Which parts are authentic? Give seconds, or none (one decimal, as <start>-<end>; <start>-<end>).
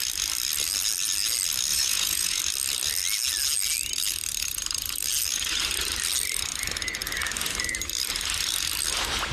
0.0-1.7; 2.4-9.3